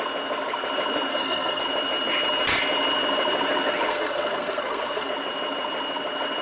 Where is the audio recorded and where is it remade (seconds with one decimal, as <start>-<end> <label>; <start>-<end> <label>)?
0.0-1.1 recorded; 1.1-1.6 remade; 1.6-3.9 recorded; 3.9-5.1 remade; 5.1-6.4 recorded